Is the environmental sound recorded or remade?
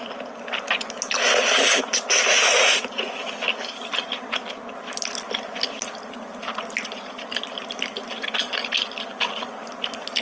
recorded